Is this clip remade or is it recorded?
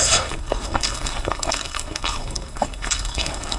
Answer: remade